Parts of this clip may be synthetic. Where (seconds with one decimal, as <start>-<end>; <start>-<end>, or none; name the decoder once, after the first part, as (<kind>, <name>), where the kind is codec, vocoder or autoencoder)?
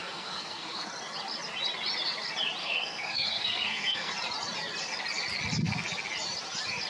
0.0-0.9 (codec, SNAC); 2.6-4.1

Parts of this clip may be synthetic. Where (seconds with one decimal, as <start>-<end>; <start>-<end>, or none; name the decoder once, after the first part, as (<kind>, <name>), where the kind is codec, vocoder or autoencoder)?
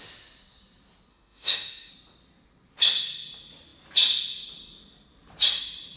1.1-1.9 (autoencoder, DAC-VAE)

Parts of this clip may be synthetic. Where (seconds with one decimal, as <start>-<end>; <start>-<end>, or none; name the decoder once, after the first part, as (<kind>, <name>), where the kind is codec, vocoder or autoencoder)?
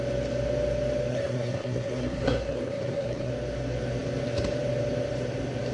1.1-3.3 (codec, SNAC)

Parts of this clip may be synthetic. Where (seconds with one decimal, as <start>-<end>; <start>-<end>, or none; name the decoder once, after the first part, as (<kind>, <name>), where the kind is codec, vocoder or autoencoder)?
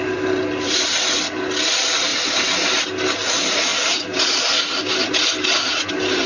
none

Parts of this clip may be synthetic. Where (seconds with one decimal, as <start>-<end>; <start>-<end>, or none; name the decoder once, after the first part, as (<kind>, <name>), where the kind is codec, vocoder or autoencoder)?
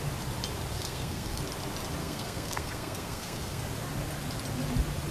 0.7-1.4 (codec, SNAC); 2.0-3.6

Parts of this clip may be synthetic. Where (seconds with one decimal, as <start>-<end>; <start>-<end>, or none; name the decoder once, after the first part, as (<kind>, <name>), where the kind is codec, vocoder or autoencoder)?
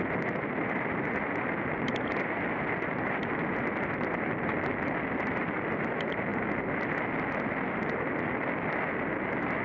none